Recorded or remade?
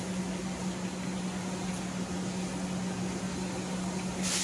recorded